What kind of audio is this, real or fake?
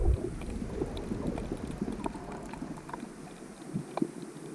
real